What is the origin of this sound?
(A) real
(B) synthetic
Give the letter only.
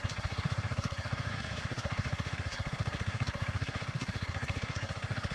B